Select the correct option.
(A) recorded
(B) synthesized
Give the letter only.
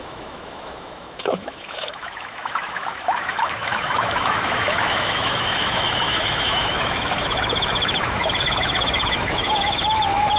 B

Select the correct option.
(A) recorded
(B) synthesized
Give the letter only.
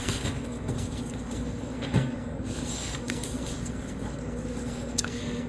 B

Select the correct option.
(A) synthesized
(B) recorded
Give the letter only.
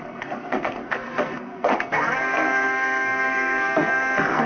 A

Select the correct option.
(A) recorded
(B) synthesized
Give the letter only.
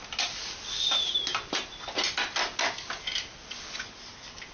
A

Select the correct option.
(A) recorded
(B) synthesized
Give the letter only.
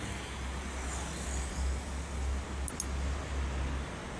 A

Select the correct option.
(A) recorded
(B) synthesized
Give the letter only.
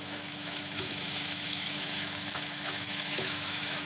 B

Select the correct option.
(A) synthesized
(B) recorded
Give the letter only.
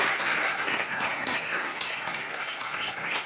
A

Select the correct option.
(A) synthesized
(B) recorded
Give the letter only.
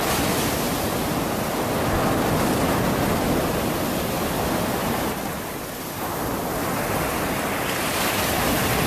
B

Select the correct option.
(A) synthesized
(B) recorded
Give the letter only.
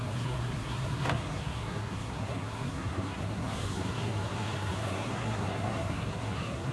A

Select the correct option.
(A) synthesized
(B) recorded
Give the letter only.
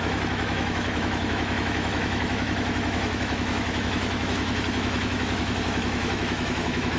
A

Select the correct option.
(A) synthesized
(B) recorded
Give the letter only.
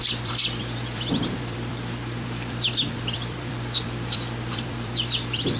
A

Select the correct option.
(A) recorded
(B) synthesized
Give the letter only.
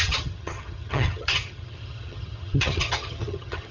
B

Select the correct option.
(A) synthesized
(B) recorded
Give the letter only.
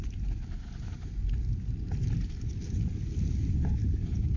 B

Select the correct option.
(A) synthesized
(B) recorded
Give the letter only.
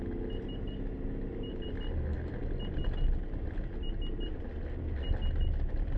B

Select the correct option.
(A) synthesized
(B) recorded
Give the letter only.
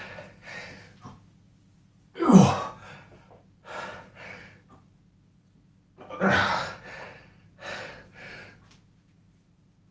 B